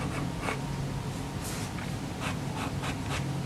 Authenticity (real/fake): real